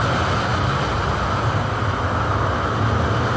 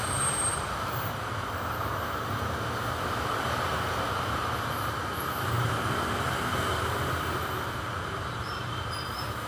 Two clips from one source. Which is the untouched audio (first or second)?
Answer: first